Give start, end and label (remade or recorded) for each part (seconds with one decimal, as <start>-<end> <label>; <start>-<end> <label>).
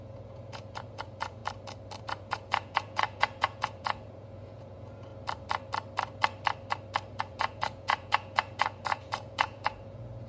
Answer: 0.0-1.4 remade; 1.4-2.0 recorded; 2.0-5.1 remade; 5.1-7.2 recorded; 7.2-10.3 remade